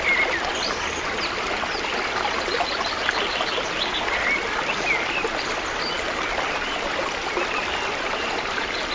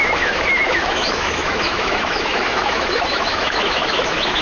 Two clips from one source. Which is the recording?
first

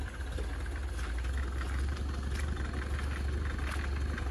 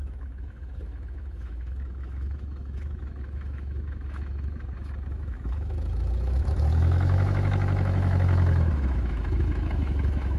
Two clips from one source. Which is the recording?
first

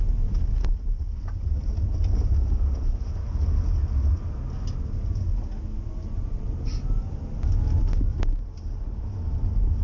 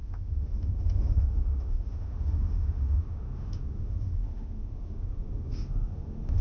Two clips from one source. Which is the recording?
first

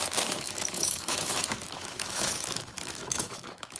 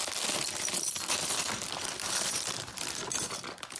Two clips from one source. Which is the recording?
second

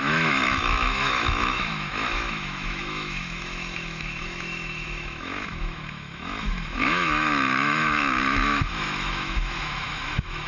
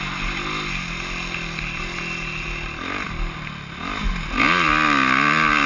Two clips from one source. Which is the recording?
second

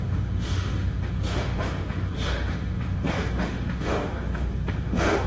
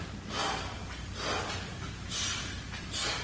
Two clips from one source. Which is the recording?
second